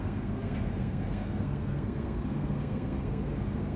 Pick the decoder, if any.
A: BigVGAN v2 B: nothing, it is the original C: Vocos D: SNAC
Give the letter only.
D